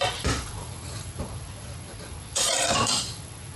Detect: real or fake fake